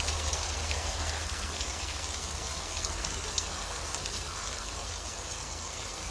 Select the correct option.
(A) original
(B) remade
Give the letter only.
B